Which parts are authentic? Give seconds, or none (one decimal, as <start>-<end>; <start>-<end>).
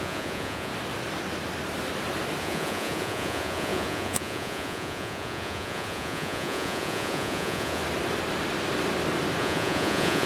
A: 0.7-2.4; 7.8-9.4